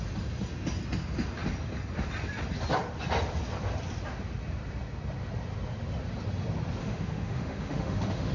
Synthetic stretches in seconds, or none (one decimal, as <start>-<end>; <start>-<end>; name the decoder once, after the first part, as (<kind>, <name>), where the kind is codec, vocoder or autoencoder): 6.8-8.3 (autoencoder, DAC-VAE)